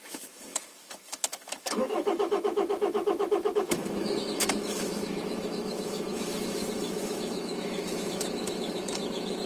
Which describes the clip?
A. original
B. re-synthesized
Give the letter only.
B